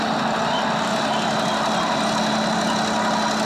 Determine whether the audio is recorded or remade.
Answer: recorded